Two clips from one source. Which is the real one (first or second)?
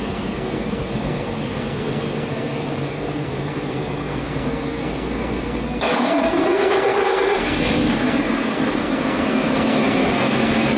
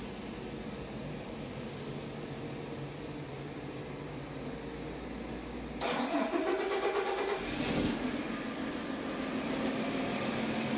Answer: second